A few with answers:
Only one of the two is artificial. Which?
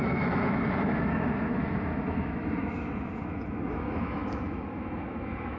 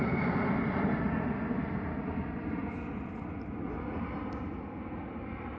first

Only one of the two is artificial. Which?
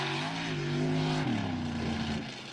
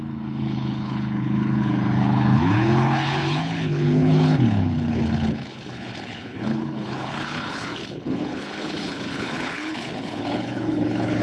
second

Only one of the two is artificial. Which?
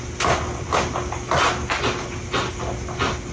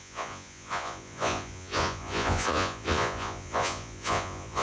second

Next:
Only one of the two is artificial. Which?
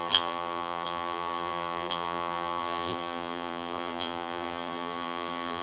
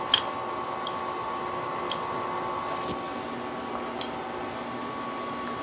first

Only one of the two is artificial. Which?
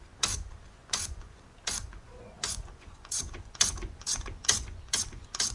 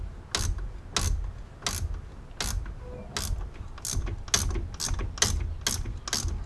first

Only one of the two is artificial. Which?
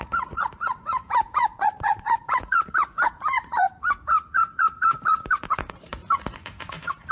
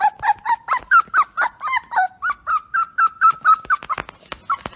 first